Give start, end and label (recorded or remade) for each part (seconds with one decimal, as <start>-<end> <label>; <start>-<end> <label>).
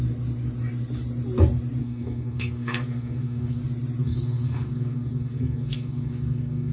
0.0-1.8 recorded; 1.8-3.6 remade; 3.6-4.0 recorded; 4.0-6.7 remade